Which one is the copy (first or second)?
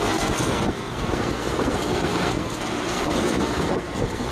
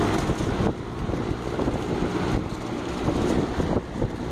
first